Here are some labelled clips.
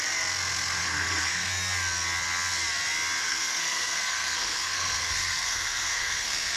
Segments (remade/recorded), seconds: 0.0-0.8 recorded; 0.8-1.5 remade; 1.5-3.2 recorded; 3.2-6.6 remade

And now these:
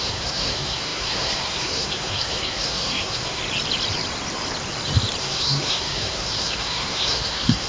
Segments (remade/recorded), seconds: 0.0-3.4 remade; 3.4-5.2 recorded; 5.2-7.7 remade

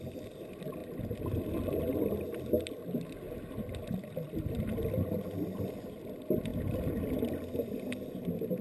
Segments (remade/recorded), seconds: 0.0-8.6 recorded